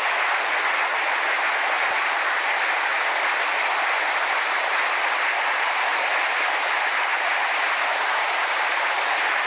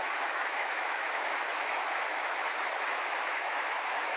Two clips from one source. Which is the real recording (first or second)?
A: first